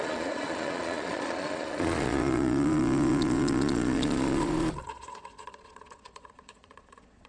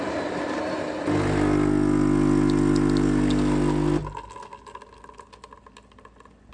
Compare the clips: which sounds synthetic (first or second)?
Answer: first